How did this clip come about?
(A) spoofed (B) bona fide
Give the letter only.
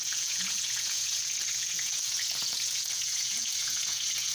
A